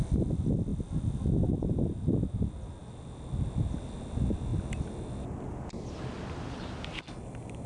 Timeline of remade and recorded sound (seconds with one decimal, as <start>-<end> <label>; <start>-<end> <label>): 0.0-7.7 recorded